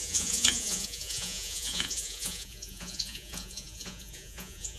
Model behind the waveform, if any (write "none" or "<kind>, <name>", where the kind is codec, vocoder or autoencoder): vocoder, Vocos